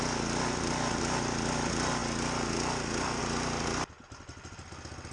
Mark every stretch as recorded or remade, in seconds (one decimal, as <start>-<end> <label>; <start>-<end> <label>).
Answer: 0.0-5.1 recorded